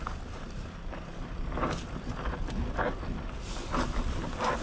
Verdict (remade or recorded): recorded